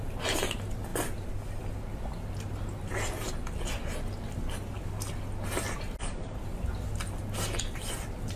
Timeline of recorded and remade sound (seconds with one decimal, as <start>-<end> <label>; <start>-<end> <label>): 0.0-8.4 recorded